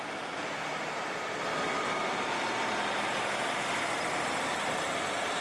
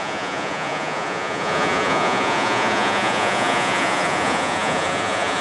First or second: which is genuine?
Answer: first